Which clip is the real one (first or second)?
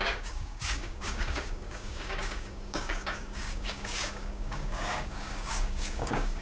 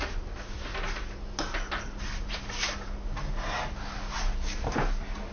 second